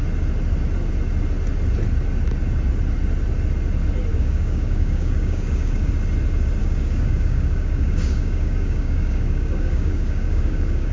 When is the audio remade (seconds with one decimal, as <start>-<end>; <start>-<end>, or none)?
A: 4.1-5.9; 6.6-10.9